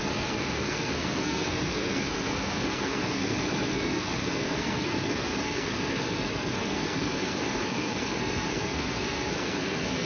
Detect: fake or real fake